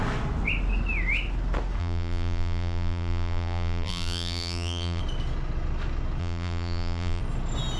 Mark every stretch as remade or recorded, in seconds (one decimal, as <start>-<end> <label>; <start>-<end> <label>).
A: 0.0-1.8 recorded; 1.8-5.0 remade; 5.0-6.2 recorded; 6.2-7.2 remade; 7.2-7.8 recorded